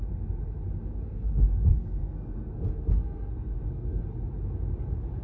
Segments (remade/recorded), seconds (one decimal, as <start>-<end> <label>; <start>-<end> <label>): 0.0-0.9 recorded; 0.9-4.0 remade; 4.0-5.2 recorded